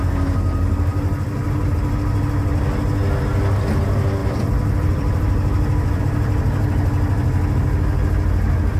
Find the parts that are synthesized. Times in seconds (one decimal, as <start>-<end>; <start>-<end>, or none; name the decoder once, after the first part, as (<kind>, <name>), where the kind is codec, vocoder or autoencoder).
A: 4.2-6.0 (vocoder, BigVGAN v2)